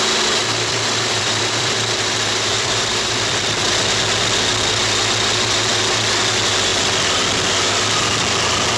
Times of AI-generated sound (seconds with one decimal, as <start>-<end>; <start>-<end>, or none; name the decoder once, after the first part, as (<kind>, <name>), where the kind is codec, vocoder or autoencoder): 0.4-3.6 (vocoder, BigVGAN v2)